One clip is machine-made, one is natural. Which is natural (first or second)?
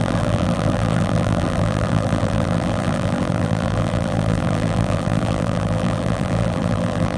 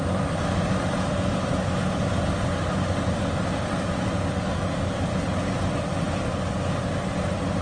second